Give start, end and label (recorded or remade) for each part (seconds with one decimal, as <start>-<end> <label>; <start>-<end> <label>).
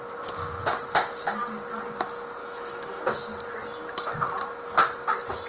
0.0-2.4 recorded; 2.4-3.0 remade; 3.0-5.5 recorded